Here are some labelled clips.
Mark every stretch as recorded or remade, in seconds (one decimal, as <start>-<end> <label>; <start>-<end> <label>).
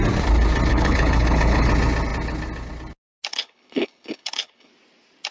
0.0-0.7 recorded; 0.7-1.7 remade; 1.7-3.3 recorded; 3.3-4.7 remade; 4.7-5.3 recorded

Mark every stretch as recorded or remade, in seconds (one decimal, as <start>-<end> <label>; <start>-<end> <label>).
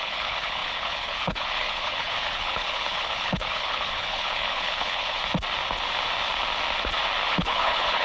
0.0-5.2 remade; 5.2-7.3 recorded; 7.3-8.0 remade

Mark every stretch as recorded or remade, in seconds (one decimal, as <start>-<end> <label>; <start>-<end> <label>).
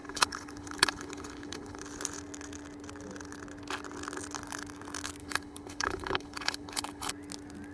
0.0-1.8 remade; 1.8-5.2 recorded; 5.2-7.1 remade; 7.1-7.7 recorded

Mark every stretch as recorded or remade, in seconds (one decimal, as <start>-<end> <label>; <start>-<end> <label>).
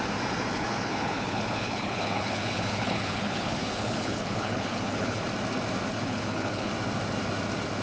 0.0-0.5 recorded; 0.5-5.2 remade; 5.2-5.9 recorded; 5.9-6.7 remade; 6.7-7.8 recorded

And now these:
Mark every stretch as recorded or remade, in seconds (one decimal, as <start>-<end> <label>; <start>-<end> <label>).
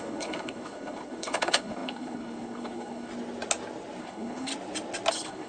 0.0-3.1 remade; 3.1-4.0 recorded; 4.0-4.5 remade; 4.5-5.1 recorded; 5.1-5.5 remade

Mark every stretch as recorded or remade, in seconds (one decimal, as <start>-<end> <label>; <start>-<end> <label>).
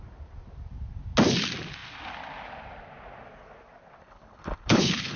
0.0-4.0 recorded; 4.0-5.2 remade